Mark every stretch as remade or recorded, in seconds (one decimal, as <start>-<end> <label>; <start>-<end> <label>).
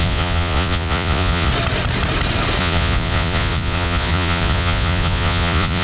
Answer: 0.0-1.5 remade; 1.5-2.6 recorded; 2.6-5.8 remade